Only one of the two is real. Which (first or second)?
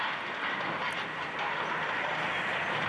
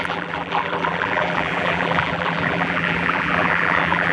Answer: first